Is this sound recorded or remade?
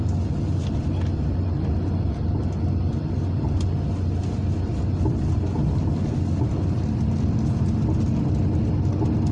recorded